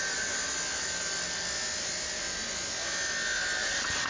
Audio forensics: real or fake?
real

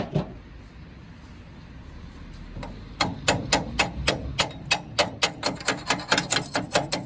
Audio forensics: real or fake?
real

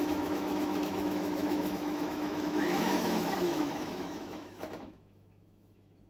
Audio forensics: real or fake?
fake